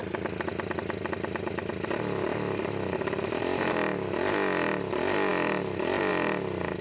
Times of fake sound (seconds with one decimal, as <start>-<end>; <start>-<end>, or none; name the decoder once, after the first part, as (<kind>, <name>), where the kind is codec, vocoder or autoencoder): none